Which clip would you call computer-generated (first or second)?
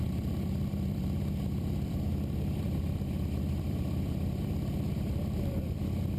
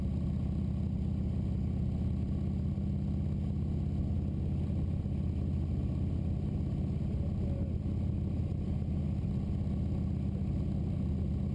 first